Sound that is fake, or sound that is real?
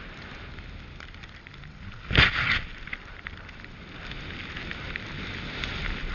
real